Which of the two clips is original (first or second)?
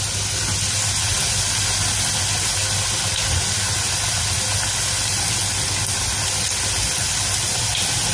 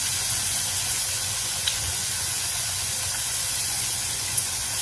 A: first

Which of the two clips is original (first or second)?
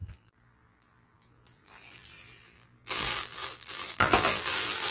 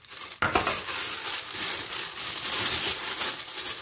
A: second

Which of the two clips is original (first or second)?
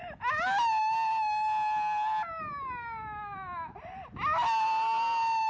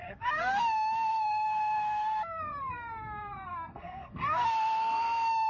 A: first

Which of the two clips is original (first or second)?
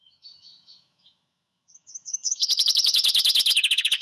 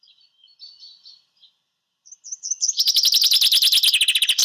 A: second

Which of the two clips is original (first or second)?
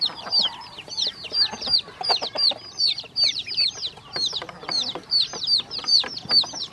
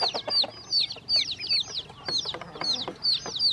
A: second